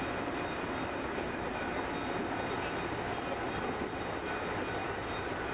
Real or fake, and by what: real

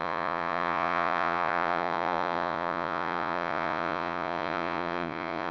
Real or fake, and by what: fake, vocoder, Vocos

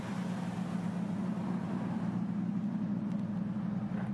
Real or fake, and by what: real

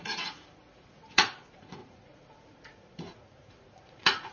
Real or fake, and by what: fake, vocoder, Vocos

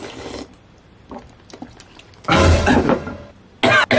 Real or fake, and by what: real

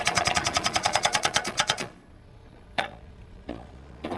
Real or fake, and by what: fake, vocoder, Vocos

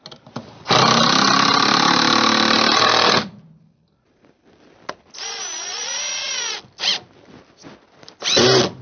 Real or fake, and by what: real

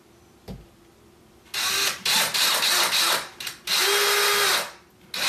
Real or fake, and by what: real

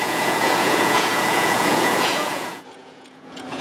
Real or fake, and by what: fake, vocoder, Vocos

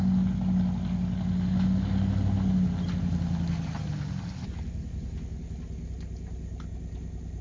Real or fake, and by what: real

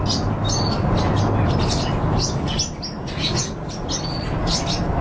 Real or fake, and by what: real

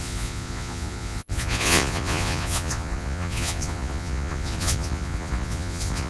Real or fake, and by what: fake, vocoder, Vocos